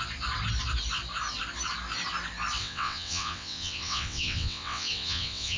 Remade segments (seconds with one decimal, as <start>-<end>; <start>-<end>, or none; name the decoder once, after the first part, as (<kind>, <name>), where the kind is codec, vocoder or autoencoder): 2.6-5.6 (vocoder, WaveNeXt)